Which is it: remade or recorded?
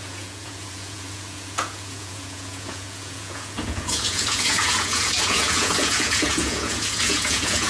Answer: remade